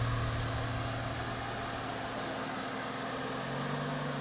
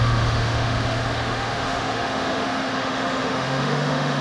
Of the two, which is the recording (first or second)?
first